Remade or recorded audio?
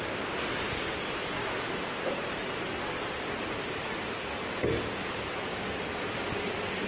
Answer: recorded